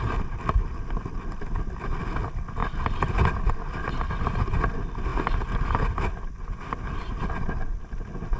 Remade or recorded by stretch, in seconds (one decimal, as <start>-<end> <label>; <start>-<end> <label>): 0.0-8.4 recorded